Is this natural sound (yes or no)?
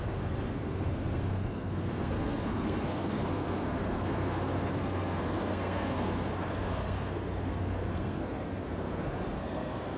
no